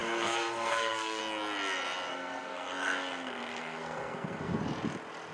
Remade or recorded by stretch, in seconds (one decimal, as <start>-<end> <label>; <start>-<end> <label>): 0.0-1.2 remade; 1.2-2.1 recorded; 2.1-4.6 remade; 4.6-5.3 recorded

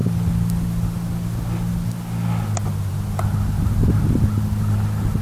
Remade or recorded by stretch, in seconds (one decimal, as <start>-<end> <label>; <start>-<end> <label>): 0.0-5.2 recorded

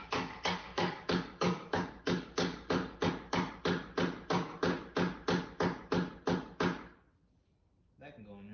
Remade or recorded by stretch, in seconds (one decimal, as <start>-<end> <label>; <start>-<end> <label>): 0.0-3.1 remade; 3.1-8.5 recorded